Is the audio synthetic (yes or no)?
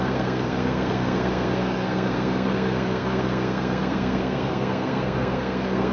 yes